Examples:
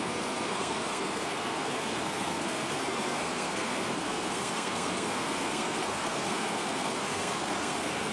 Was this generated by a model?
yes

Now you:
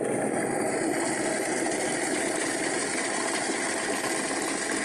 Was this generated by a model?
no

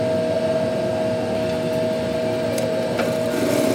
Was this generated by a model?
no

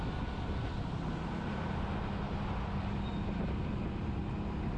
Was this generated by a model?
no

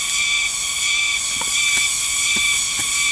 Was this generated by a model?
no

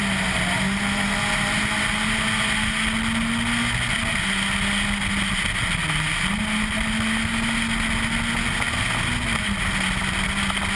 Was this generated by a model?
no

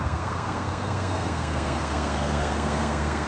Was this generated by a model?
yes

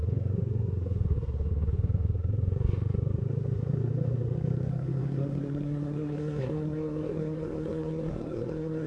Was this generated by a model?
yes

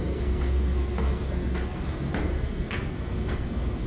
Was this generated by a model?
yes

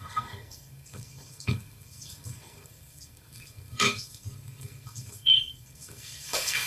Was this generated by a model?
yes